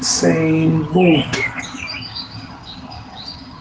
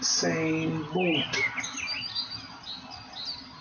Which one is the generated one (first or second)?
first